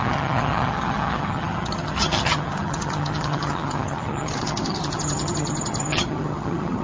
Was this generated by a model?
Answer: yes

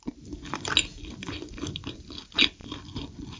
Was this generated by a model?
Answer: no